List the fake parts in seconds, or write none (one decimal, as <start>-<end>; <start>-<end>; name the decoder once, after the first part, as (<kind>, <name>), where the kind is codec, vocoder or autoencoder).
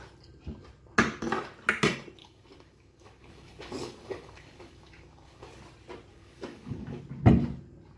2.2-5.6 (codec, DAC); 6.1-7.0